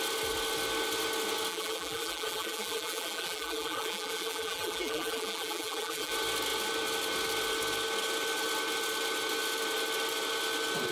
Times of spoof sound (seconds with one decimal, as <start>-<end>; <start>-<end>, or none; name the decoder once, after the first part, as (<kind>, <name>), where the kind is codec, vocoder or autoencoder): 1.5-6.1 (vocoder, BigVGAN v2)